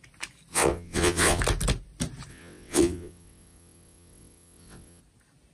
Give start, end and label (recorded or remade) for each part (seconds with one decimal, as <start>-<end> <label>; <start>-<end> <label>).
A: 0.0-0.5 recorded; 0.5-1.4 remade; 1.4-2.3 recorded; 2.3-5.0 remade; 5.0-5.5 recorded